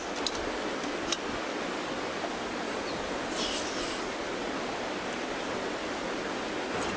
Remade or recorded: recorded